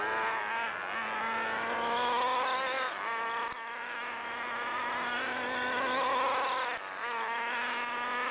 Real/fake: real